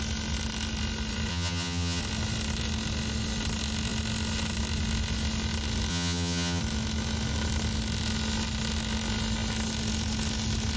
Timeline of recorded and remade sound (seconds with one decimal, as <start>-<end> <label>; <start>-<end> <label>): 0.0-1.3 recorded; 1.3-2.0 remade; 2.0-5.9 recorded; 5.9-6.6 remade; 6.6-10.8 recorded